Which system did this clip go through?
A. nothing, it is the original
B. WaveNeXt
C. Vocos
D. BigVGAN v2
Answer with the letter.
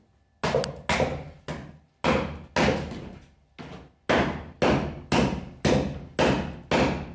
A